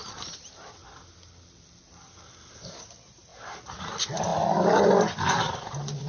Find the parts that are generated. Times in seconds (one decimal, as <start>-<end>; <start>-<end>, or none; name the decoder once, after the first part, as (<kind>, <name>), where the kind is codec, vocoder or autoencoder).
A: 0.0-3.3 (vocoder, BigVGAN v2); 3.8-6.1